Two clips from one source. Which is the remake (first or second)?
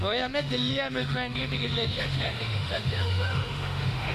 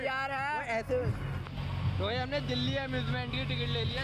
first